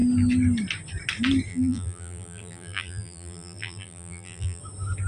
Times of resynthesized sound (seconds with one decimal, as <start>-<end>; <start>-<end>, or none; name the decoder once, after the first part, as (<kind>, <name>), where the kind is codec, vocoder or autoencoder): 1.5-4.6 (vocoder, BigVGAN v2)